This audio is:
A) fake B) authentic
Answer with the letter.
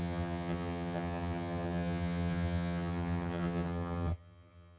A